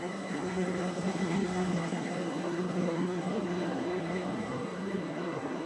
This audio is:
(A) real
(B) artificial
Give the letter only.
B